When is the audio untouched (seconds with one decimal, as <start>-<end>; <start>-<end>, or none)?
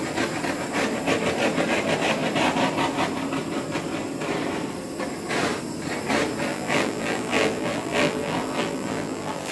0.0-6.5